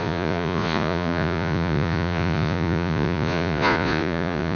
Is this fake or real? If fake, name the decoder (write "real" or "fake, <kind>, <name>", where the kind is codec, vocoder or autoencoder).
fake, vocoder, Vocos